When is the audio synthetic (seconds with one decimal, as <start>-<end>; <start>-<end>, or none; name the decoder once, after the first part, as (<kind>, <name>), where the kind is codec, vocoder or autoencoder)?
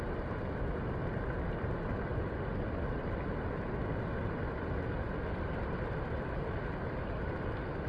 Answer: none